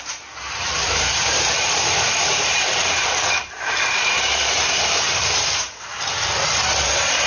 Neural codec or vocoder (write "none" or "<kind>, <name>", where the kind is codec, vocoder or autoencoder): vocoder, BigVGAN v2